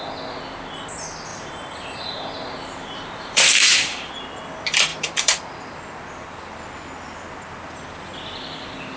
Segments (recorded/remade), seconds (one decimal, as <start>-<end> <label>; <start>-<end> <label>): 0.0-1.3 recorded; 1.3-4.1 remade; 4.1-4.9 recorded; 4.9-5.5 remade; 5.5-9.0 recorded